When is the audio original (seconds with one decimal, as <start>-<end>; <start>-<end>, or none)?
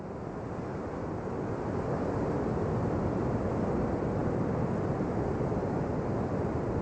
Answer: 0.0-6.8